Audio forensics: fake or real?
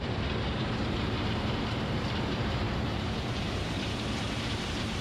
fake